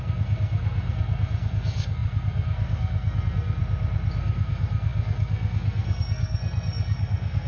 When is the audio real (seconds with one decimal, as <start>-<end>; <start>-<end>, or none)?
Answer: 3.6-4.2